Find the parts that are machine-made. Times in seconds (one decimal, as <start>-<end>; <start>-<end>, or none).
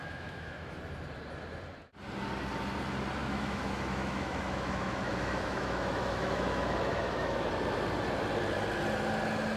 0.0-0.8; 3.2-7.5